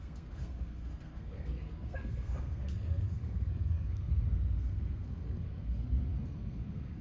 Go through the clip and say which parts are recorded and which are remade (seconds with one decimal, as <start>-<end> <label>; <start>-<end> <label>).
0.0-7.0 remade